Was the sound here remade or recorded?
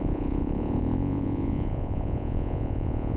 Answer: remade